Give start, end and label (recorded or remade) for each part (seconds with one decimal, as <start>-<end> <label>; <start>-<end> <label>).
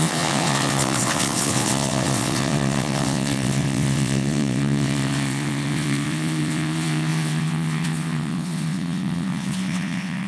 0.0-10.3 remade